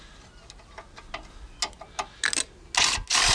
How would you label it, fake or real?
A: real